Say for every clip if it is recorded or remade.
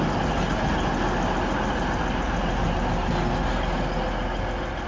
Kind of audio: recorded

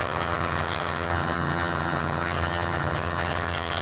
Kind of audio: remade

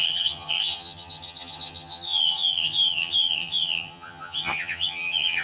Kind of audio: remade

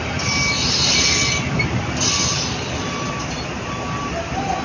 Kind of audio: recorded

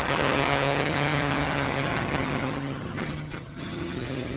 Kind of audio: remade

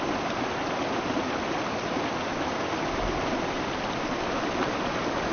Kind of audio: recorded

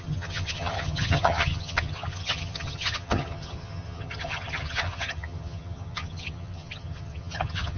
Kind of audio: remade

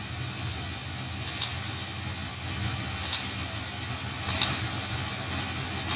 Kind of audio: recorded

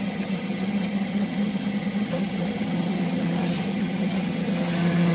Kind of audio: remade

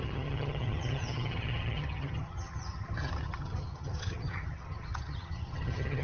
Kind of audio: remade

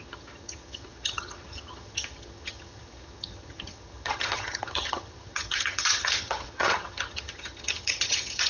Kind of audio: remade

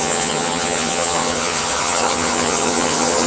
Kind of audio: remade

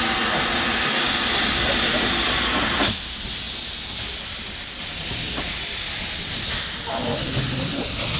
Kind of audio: recorded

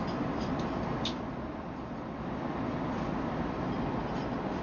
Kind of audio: recorded